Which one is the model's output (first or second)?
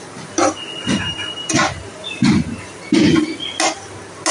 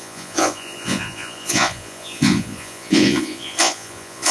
second